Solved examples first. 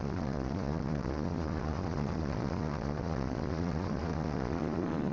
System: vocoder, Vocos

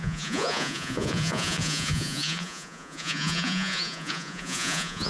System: vocoder, Vocos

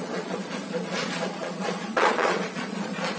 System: vocoder, Vocos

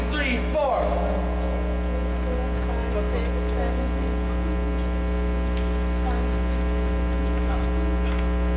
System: none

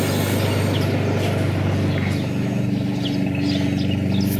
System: none